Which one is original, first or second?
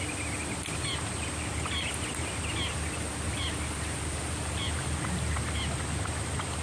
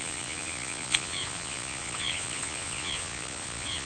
first